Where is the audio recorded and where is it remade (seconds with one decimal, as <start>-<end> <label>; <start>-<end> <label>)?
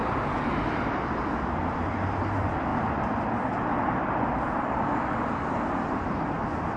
0.0-6.8 recorded